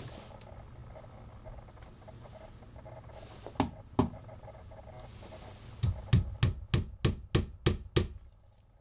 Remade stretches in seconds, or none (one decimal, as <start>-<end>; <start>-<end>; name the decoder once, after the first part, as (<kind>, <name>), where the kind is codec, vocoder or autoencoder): none